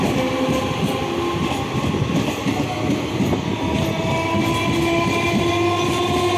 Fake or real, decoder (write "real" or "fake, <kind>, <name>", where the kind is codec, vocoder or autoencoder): real